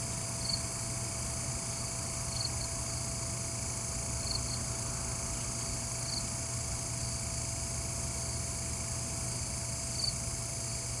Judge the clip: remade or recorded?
recorded